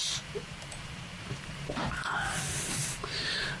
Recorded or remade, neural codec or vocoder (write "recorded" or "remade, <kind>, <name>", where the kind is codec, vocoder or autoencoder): remade, vocoder, BigVGAN v2